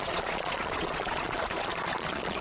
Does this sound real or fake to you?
fake